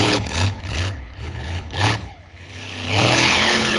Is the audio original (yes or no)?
no